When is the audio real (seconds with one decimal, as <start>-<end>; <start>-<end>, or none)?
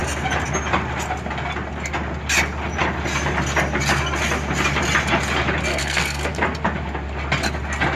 0.0-5.7; 6.3-8.0